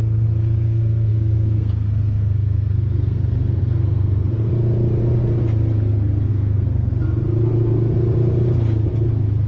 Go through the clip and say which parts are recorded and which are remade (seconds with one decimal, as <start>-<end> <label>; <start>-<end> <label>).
0.0-4.5 remade; 4.5-6.3 recorded; 6.3-6.9 remade; 6.9-9.5 recorded